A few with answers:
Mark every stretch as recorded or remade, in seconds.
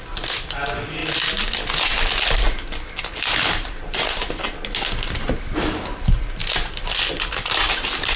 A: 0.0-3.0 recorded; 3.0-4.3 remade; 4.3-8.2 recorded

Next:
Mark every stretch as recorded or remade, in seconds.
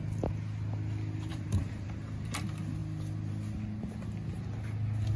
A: 0.0-1.3 recorded; 1.3-2.4 remade; 2.4-5.2 recorded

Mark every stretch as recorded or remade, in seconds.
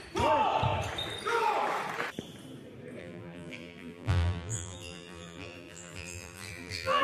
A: 0.0-3.0 recorded; 3.0-7.0 remade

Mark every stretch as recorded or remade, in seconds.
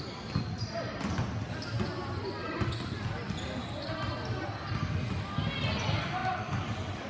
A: 0.0-2.4 recorded; 2.4-3.1 remade; 3.1-6.2 recorded; 6.2-7.1 remade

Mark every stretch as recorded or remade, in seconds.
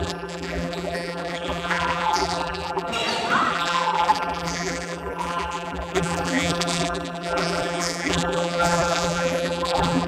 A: 0.0-2.9 remade; 2.9-3.5 recorded; 3.5-10.1 remade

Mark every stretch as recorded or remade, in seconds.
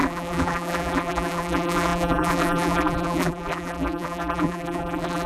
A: 0.0-5.3 remade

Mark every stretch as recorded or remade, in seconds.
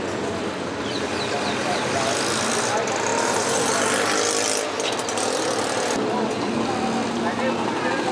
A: 0.0-8.1 recorded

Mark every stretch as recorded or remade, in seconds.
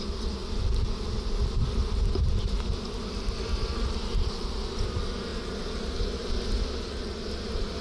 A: 0.0-7.8 recorded